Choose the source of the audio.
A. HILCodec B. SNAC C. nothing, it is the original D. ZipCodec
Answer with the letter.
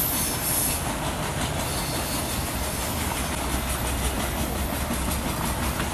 C